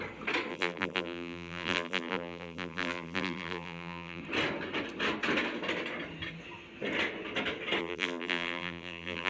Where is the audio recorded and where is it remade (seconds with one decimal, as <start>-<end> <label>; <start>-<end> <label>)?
0.0-0.5 recorded; 0.5-4.2 remade; 4.2-7.8 recorded; 7.8-9.3 remade